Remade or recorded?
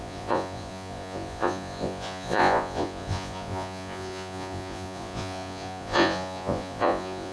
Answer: remade